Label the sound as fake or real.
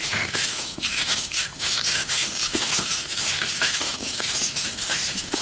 fake